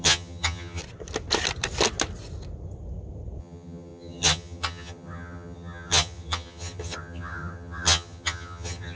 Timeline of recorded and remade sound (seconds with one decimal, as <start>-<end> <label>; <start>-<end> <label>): 0.0-0.8 remade; 0.8-3.4 recorded; 3.4-9.0 remade